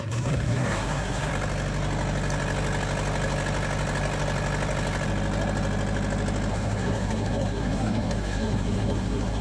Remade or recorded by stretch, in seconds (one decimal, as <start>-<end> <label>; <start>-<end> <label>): 0.0-1.3 remade; 1.3-6.5 recorded; 6.5-9.4 remade